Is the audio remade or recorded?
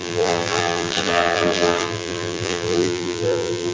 remade